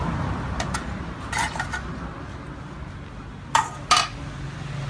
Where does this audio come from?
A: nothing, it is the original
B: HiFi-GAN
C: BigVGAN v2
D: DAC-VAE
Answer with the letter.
A